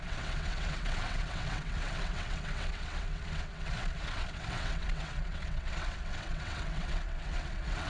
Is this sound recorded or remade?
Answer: remade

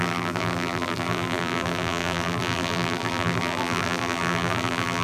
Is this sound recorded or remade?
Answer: remade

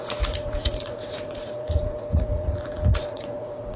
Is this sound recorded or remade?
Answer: remade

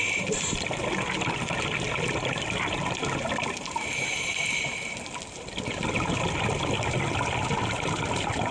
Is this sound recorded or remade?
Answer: recorded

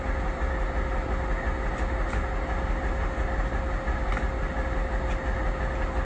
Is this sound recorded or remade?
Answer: recorded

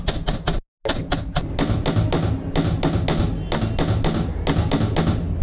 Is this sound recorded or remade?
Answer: recorded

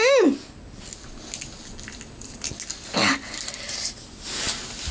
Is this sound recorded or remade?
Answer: recorded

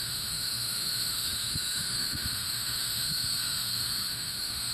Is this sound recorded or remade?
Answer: remade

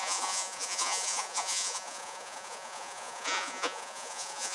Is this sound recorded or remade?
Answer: remade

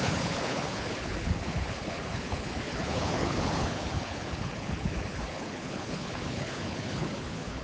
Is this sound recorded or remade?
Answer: remade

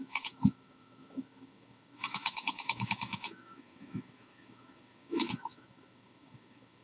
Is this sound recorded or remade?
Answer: remade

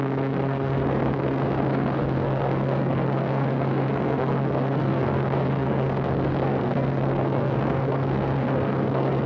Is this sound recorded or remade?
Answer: remade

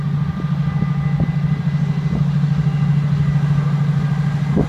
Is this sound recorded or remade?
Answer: recorded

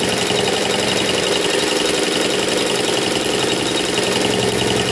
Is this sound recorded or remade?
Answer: recorded